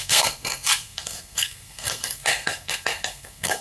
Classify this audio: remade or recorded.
remade